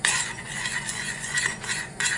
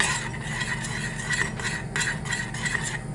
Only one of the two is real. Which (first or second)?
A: second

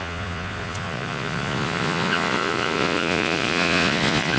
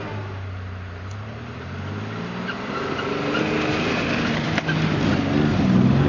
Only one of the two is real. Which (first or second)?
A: second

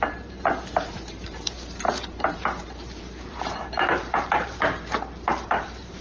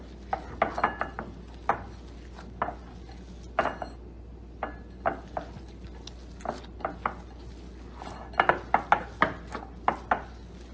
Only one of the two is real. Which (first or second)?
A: second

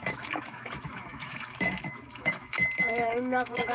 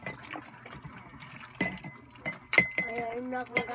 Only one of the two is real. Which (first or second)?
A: second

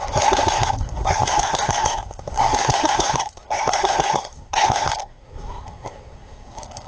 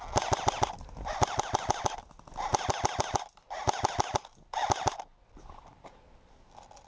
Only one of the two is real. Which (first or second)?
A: second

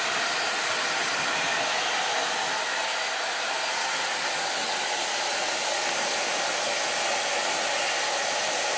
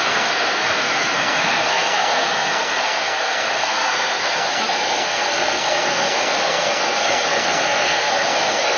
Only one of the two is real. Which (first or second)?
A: first